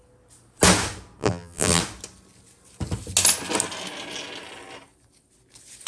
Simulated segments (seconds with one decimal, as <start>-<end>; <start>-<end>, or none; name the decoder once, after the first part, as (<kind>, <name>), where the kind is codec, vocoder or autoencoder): 1.2-1.8 (vocoder, BigVGAN v2)